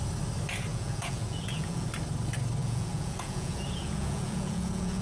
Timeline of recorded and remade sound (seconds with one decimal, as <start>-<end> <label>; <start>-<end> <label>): 0.0-0.7 recorded; 0.7-1.9 remade; 1.9-2.6 recorded; 2.6-5.0 remade